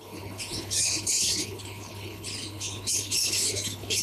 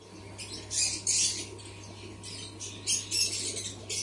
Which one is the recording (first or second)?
second